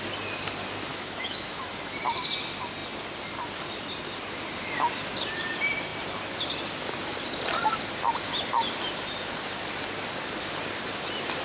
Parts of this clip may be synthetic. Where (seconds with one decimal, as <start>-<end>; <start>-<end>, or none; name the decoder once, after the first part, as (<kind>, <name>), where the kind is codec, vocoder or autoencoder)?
0.9-1.7 (autoencoder, DAC-VAE)